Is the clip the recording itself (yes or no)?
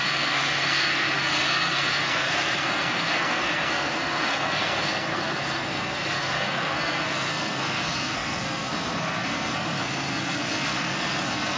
no